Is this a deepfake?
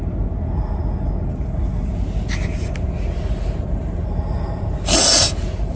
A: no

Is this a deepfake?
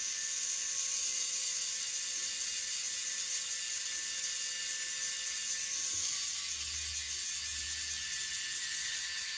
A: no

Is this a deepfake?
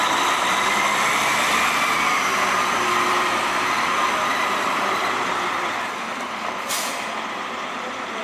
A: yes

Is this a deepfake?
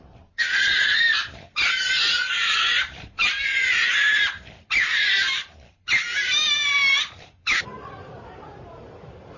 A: yes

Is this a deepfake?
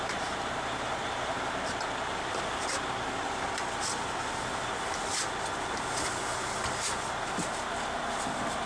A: no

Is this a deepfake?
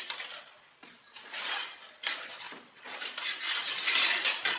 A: no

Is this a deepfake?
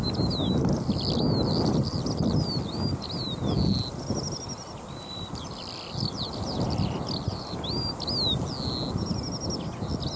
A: no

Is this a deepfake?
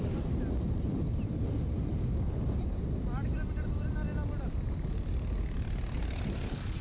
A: no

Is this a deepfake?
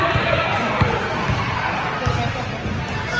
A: no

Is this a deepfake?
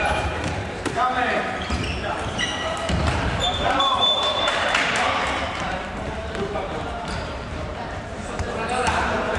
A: yes